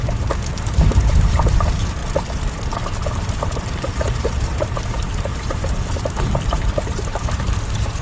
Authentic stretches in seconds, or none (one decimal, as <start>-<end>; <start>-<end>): 2.0-3.1